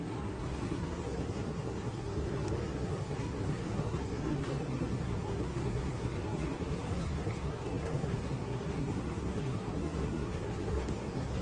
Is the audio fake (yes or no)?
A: yes